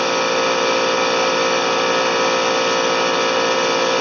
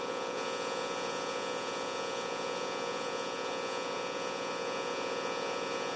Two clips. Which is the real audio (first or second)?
first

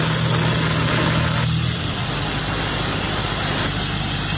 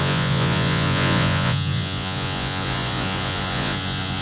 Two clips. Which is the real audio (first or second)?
first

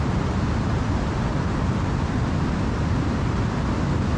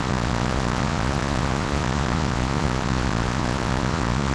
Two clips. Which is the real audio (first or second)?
first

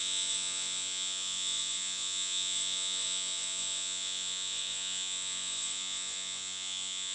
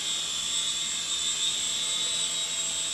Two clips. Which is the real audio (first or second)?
second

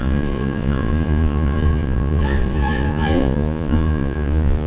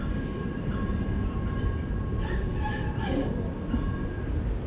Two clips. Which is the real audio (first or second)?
second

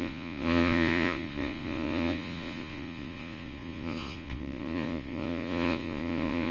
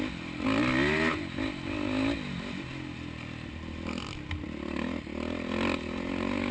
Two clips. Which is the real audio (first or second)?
second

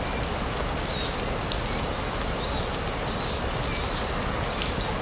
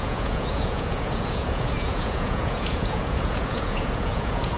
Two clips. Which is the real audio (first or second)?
first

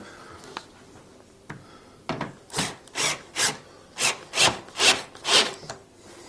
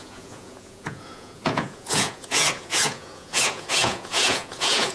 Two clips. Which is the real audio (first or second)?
first